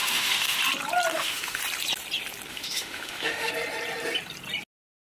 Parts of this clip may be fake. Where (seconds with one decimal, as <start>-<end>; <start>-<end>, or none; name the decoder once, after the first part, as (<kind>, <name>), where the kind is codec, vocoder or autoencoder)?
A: 0.0-0.6 (autoencoder, DAC-VAE); 1.1-1.6; 2.5-3.5